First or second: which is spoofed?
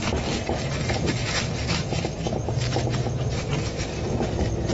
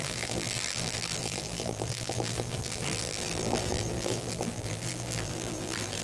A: second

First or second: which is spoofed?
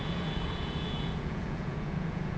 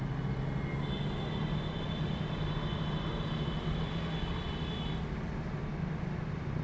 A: first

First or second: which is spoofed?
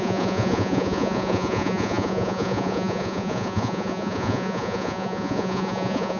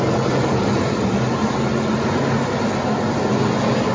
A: first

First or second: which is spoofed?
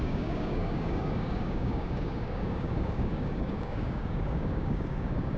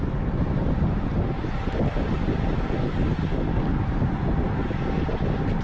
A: first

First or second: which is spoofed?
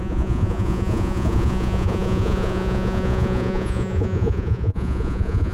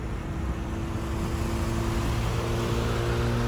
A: first